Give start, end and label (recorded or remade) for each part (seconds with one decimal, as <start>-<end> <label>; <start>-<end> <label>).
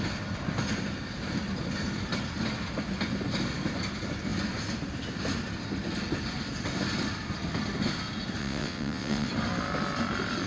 0.0-8.4 recorded; 8.4-9.3 remade; 9.3-10.5 recorded